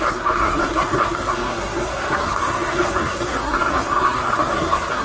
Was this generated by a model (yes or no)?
yes